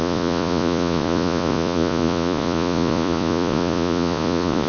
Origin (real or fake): fake